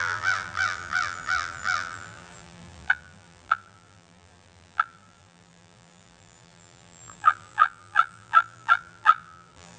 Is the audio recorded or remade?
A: remade